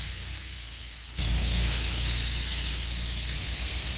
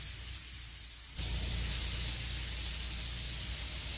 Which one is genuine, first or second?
second